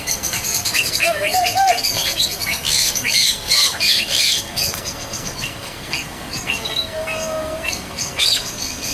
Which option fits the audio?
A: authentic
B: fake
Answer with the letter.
B